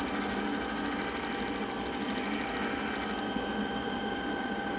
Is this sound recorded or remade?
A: recorded